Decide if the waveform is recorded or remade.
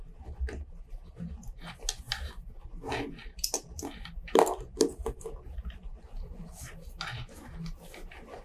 recorded